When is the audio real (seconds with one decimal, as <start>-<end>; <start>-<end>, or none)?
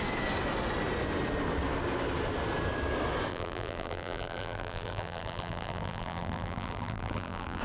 0.0-3.3